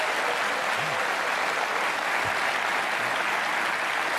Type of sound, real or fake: real